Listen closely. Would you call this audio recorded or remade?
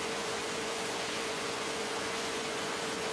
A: remade